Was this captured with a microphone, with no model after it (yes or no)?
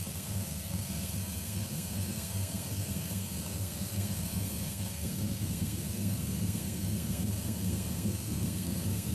no